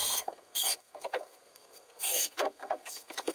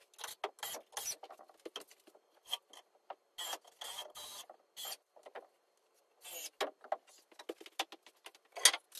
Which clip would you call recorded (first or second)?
second